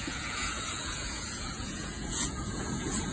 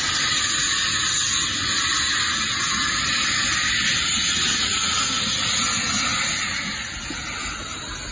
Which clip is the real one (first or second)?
second